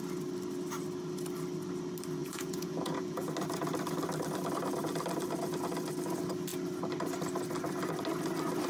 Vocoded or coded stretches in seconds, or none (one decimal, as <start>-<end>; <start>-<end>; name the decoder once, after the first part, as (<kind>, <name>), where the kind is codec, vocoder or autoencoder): 2.2-3.3 (vocoder, Vocos)